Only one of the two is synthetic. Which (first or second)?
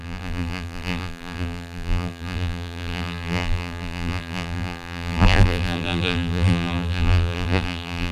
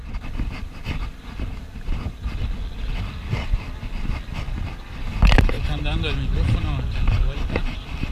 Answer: first